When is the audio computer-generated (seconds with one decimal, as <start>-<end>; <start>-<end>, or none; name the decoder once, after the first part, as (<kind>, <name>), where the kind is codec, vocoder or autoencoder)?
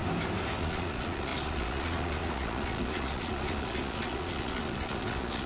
0.6-5.5 (vocoder, Vocos)